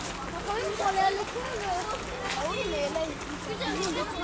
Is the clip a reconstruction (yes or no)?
no